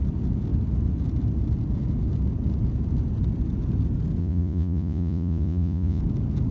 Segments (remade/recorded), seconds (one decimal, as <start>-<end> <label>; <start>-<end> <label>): 0.0-4.2 recorded; 4.2-6.0 remade; 6.0-6.5 recorded